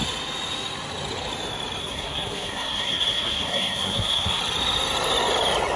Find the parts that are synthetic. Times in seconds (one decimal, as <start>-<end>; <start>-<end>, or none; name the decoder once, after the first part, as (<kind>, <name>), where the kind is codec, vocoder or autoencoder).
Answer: 1.8-4.4 (codec, SNAC)